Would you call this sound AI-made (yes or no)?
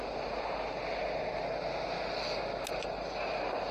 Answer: no